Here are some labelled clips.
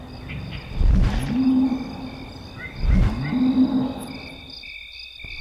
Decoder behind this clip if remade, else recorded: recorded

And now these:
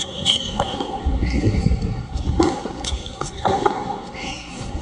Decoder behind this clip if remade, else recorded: remade, codec, SNAC